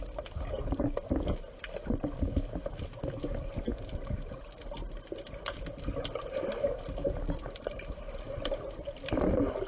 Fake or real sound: real